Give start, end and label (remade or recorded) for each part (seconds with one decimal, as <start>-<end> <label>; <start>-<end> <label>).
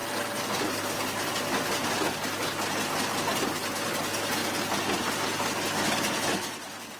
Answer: 0.0-7.0 recorded